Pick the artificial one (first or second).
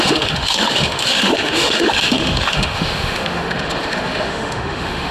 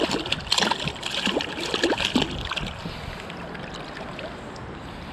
first